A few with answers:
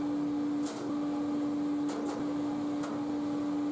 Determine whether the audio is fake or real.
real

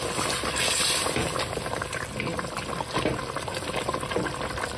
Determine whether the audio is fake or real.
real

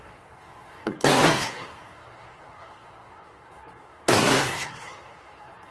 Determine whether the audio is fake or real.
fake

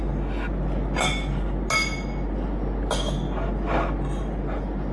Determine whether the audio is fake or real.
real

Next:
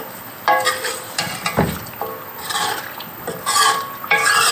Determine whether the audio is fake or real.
fake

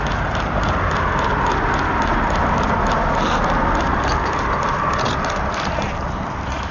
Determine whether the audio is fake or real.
real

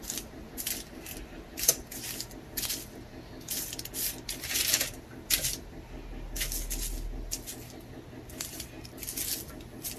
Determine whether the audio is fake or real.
real